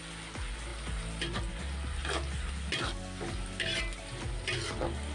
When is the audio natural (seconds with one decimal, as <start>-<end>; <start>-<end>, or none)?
0.0-5.1